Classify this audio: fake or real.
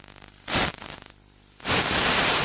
fake